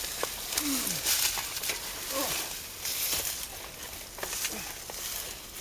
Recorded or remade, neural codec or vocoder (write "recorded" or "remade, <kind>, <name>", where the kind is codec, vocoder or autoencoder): recorded